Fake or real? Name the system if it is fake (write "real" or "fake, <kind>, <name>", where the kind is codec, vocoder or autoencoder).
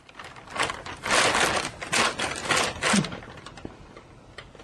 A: real